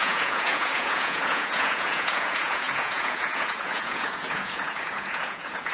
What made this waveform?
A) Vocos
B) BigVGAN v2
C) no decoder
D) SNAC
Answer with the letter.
A